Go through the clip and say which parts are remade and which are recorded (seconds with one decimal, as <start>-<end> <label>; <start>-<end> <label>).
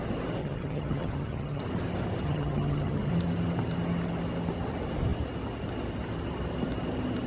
0.0-0.4 recorded; 0.4-1.6 remade; 1.6-2.2 recorded; 2.2-3.1 remade; 3.1-7.3 recorded